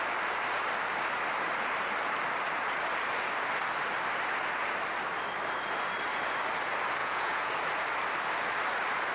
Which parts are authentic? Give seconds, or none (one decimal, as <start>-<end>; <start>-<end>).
0.0-7.0; 7.5-9.1